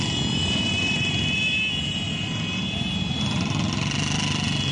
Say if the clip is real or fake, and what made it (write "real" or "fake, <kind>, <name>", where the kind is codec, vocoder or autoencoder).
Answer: real